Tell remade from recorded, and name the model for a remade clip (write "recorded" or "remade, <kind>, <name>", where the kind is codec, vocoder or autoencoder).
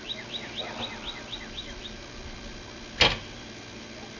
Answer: recorded